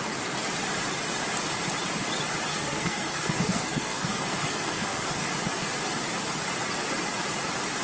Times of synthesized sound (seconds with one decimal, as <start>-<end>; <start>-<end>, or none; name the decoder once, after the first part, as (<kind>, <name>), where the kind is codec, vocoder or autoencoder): 2.5-5.1 (codec, SNAC)